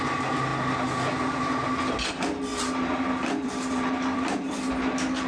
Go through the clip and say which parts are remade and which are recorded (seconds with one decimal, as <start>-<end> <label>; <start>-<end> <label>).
0.0-2.5 recorded; 2.5-4.7 remade; 4.7-5.3 recorded